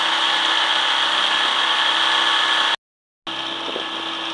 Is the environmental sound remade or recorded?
recorded